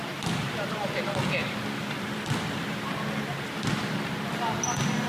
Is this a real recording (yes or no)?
yes